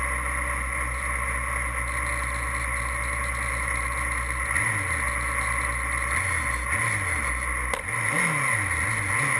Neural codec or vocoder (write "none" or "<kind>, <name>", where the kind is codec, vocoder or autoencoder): none